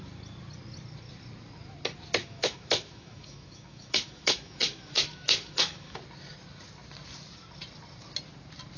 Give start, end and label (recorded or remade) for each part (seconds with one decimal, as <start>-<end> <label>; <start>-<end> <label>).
0.0-2.2 recorded; 2.2-6.0 remade; 6.0-8.8 recorded

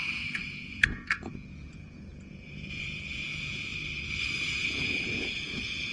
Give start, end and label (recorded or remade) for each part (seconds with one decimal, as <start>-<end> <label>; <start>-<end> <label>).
0.0-3.7 remade; 3.7-4.4 recorded; 4.4-5.9 remade

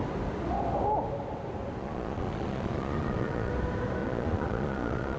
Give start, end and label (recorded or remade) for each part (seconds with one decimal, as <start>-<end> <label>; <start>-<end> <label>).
0.0-1.8 recorded; 1.8-3.5 remade; 3.5-4.0 recorded; 4.0-5.2 remade

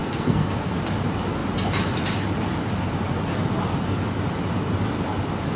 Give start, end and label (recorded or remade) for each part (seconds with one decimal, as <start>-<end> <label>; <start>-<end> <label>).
0.0-0.7 remade; 0.7-5.6 recorded

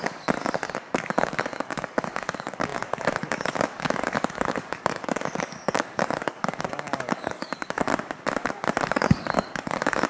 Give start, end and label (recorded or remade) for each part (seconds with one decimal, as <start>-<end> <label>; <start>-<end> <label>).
0.0-7.9 remade; 7.9-8.9 recorded; 8.9-10.1 remade